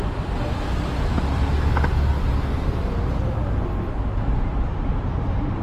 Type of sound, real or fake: real